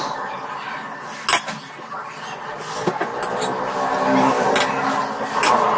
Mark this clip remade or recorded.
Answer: recorded